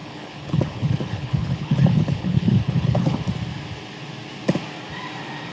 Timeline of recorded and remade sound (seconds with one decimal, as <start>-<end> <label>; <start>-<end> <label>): 0.0-3.3 remade; 3.3-5.5 recorded